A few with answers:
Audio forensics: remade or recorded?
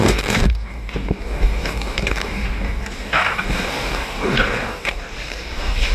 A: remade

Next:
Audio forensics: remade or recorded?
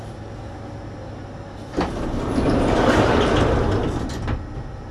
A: recorded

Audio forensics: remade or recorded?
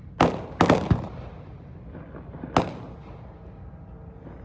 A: recorded